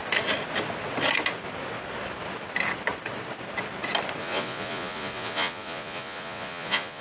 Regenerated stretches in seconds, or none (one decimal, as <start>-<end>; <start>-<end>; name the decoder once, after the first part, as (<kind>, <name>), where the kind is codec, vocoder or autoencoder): 4.2-7.0 (vocoder, Vocos)

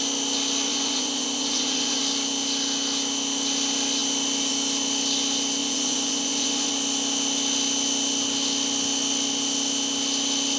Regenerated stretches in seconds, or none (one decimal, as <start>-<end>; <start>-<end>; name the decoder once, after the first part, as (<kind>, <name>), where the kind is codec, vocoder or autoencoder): 0.7-2.0 (vocoder, Vocos); 5.6-6.7

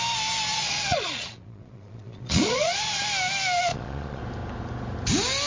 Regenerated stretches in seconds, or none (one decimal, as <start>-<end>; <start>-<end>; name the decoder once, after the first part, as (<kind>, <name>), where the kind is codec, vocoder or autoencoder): 0.5-3.0 (vocoder, Vocos); 3.7-4.2

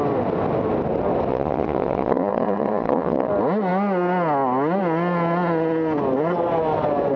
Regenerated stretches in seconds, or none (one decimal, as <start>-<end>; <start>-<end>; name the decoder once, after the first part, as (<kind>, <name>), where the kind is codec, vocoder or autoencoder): 1.3-3.3 (vocoder, Vocos)

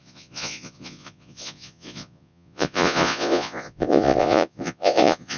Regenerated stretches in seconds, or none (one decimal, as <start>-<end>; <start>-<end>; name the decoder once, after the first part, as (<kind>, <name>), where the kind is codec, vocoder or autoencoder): 0.0-5.4 (vocoder, Vocos)

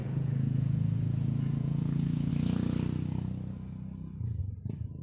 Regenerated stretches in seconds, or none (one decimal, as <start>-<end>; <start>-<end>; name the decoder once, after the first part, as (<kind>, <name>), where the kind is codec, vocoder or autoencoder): 0.0-2.3 (vocoder, Vocos)

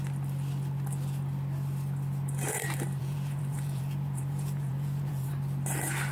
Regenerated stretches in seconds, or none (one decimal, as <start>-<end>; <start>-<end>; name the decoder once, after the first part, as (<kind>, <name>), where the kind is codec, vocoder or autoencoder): 3.0-5.3 (vocoder, Vocos)

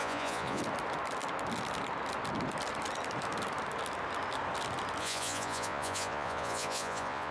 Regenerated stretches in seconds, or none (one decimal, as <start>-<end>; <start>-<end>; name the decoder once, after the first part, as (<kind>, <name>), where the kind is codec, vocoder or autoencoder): 0.0-0.6 (vocoder, Vocos); 5.0-7.3